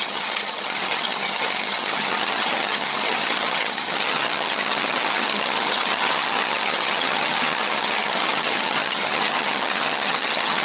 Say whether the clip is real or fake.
fake